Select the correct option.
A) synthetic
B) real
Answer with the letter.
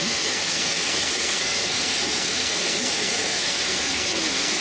A